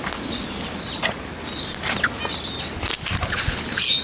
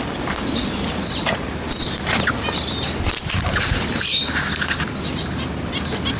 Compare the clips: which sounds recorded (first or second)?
first